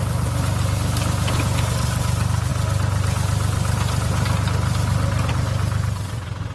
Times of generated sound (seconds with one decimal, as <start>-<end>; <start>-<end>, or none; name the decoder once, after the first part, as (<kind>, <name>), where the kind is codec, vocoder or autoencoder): none